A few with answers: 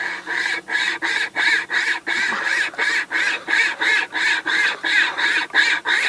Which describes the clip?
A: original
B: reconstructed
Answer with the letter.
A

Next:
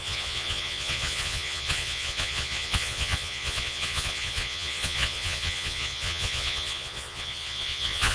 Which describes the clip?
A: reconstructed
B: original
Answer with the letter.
A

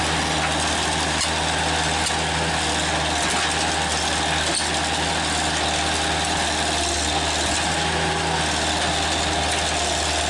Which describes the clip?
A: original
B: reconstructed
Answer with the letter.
A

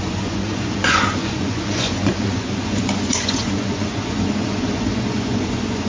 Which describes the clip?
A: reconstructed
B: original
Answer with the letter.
A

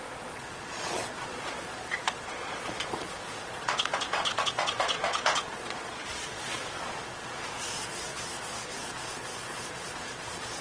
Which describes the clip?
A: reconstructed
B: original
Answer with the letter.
A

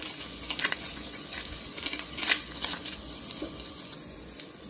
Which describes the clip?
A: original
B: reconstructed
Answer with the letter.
B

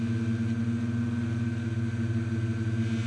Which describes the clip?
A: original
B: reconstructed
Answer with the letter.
A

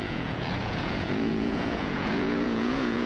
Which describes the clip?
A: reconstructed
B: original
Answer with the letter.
A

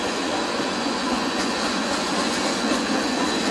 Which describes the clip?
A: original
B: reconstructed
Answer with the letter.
B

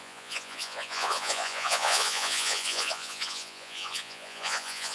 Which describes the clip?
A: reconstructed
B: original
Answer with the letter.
A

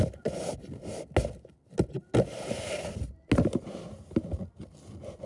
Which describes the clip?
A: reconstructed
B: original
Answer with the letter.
B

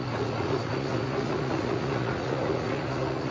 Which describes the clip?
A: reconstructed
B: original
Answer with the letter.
A